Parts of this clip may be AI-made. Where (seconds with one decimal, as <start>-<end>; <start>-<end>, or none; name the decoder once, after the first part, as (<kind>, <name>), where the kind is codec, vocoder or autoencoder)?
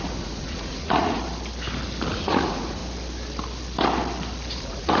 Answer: 0.0-1.2 (vocoder, Vocos); 2.1-2.8; 4.6-5.0